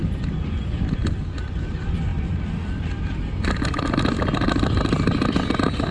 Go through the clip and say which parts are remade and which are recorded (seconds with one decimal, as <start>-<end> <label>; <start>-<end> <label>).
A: 0.0-5.9 recorded